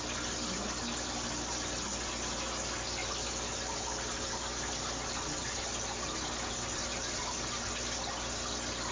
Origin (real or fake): real